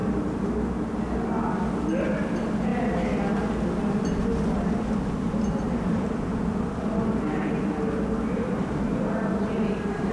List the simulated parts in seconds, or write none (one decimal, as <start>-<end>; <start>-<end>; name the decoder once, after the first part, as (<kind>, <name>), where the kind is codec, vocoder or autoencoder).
none